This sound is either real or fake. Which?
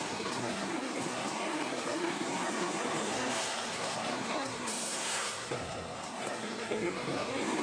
fake